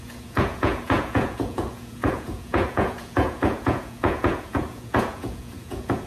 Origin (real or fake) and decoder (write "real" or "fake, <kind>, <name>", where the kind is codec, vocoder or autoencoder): fake, vocoder, Vocos